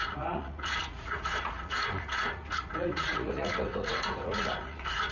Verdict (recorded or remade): remade